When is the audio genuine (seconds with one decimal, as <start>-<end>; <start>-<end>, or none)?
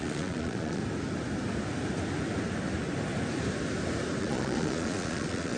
0.8-4.2